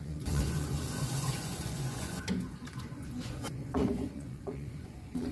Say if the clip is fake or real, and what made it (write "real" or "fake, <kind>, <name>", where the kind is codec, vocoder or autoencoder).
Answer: fake, vocoder, Vocos